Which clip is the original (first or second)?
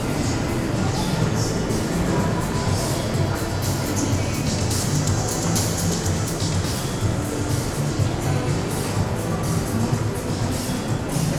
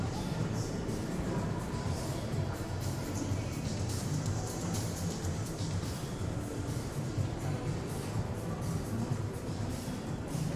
first